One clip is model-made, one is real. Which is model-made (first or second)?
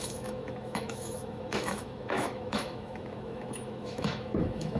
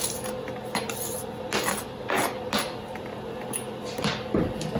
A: first